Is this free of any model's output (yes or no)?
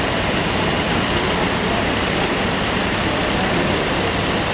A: no